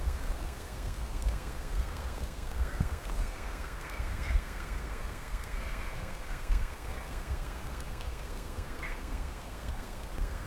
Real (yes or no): no